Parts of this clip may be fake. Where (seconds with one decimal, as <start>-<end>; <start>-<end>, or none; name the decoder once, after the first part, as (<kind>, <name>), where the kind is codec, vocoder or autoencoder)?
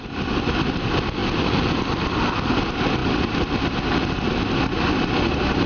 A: none